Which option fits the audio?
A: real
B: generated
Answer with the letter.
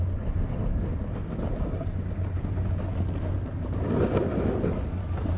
A